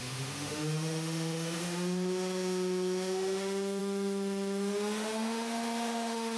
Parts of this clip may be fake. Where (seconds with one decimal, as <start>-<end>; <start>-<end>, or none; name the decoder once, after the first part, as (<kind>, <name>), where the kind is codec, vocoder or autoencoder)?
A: 0.0-6.4 (autoencoder, DAC-VAE)